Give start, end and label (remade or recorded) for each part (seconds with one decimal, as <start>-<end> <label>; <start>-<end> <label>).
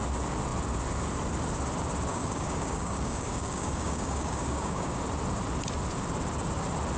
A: 0.0-2.1 recorded; 2.1-5.0 remade; 5.0-7.0 recorded